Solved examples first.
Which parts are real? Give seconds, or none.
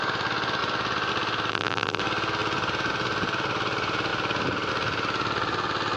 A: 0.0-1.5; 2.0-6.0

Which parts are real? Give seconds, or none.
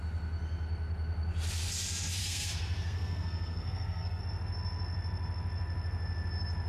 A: 0.0-2.2; 4.2-6.7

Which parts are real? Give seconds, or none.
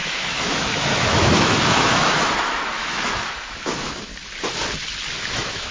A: 4.1-5.2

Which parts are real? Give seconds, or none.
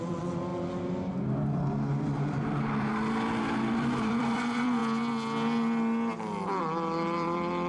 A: 0.5-3.4; 4.8-6.6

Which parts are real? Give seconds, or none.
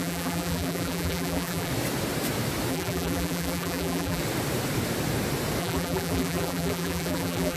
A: 1.7-2.7; 4.2-5.6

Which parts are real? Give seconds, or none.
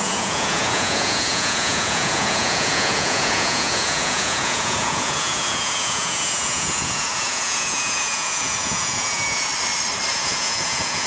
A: 9.5-10.1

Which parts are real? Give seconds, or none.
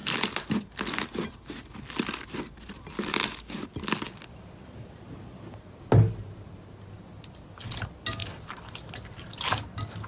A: 0.0-10.1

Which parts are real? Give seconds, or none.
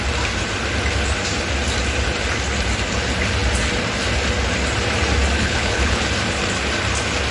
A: 0.0-5.4; 6.0-7.3